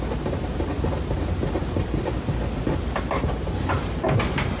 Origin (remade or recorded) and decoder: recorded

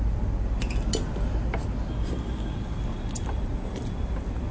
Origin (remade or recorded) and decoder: recorded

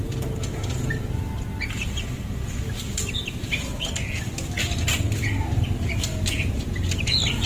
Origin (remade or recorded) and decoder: recorded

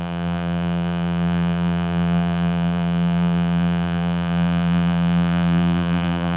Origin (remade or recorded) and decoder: remade, vocoder, BigVGAN v2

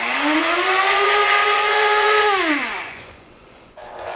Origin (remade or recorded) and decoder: remade, vocoder, Vocos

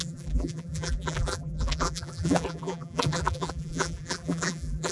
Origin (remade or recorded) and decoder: remade, vocoder, BigVGAN v2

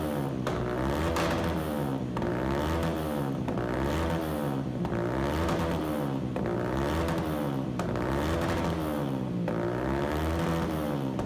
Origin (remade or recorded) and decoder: recorded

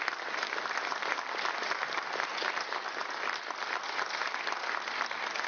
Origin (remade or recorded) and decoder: recorded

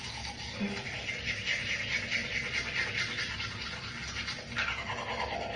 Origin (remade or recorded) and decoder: recorded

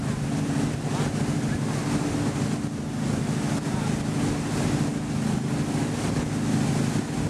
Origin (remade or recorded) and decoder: recorded